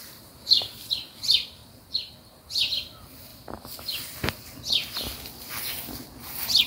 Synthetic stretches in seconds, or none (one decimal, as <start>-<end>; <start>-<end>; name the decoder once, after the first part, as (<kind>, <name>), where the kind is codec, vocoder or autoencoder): 1.6-2.4 (vocoder, BigVGAN v2); 3.3-5.5